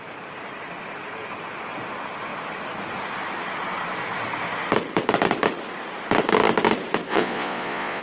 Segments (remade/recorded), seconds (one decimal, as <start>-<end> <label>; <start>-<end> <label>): 0.0-7.1 recorded; 7.1-8.0 remade